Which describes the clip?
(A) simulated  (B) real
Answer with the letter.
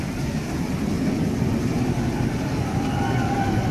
B